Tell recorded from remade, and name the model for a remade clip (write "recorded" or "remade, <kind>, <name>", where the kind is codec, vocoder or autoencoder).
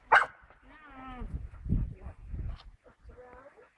recorded